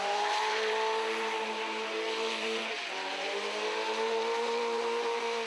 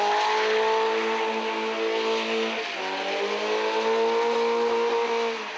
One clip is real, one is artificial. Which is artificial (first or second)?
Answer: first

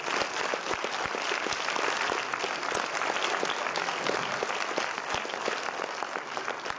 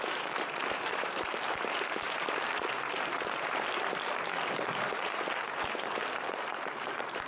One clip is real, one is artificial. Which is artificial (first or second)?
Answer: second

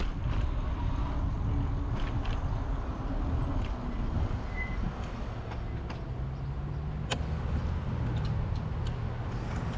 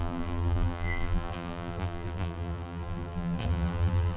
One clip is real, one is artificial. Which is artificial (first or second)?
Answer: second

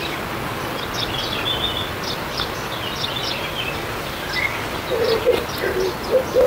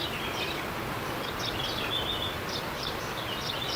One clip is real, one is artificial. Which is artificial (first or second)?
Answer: second